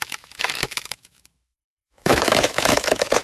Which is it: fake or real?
fake